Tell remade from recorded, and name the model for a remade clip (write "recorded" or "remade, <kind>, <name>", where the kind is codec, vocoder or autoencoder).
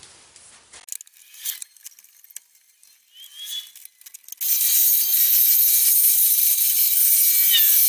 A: recorded